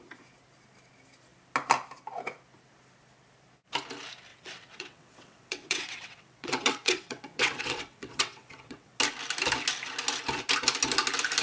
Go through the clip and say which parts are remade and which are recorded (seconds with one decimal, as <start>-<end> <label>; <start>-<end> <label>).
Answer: 0.0-4.3 recorded; 4.3-9.0 remade; 9.0-11.4 recorded